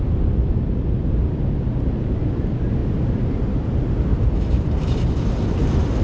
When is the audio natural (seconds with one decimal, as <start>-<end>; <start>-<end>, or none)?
0.0-2.8; 3.6-4.1; 5.0-6.0